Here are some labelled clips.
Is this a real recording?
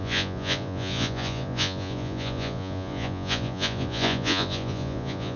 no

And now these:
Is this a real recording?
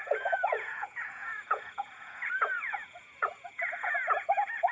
no